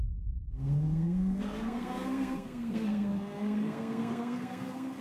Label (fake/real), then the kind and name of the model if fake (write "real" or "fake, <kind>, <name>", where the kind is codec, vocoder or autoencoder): fake, codec, SNAC